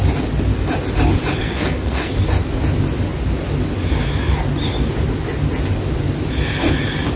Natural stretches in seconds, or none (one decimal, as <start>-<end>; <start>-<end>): 0.0-1.4; 2.1-7.2